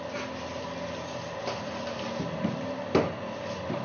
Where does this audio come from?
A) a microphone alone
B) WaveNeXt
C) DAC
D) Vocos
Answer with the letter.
A